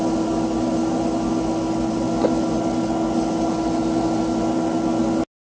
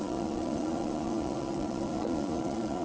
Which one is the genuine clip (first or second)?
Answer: first